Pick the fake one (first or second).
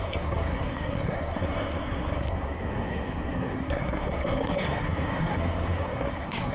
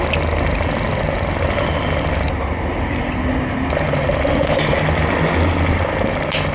first